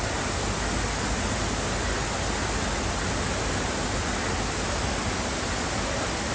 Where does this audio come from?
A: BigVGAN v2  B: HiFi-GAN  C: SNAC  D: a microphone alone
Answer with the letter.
D